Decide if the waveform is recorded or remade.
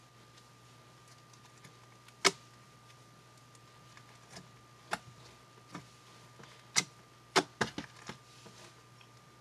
recorded